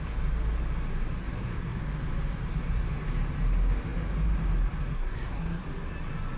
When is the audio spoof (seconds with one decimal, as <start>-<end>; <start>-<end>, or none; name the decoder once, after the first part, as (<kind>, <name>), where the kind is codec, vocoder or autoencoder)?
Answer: 1.2-1.8 (codec, SNAC); 4.9-5.6